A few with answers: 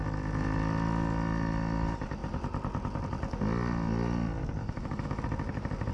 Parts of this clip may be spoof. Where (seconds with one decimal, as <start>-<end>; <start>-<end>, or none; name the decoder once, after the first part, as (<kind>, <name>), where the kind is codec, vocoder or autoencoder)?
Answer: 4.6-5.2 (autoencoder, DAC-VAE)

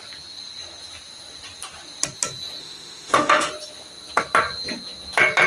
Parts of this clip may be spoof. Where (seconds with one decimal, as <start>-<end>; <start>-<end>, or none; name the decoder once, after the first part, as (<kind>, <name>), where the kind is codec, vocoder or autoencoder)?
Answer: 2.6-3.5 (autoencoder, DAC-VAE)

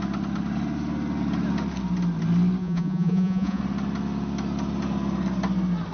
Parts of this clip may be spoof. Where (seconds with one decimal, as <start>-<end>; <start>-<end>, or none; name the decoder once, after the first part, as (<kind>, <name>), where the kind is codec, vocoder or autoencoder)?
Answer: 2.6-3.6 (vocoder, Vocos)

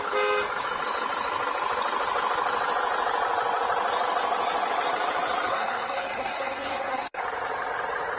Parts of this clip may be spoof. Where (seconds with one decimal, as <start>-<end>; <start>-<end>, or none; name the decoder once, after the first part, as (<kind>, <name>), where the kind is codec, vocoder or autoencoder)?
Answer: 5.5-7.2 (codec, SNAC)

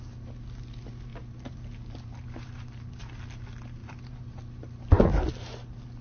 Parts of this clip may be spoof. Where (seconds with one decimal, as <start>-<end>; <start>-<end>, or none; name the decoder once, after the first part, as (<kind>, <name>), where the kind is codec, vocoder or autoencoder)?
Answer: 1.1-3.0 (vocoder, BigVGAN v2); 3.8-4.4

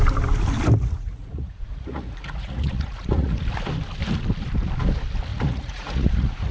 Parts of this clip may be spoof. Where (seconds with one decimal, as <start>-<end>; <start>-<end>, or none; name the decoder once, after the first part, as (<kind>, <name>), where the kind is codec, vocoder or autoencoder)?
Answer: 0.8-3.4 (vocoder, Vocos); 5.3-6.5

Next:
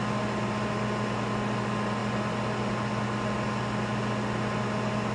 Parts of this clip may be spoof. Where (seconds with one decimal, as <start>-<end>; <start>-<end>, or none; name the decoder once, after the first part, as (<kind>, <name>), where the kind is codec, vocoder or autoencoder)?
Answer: none

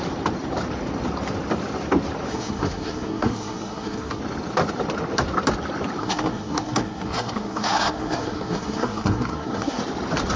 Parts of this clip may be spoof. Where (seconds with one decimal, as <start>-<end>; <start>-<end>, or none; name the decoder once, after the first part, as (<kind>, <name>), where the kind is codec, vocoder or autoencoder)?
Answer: 2.3-4.2 (codec, SNAC); 6.0-9.8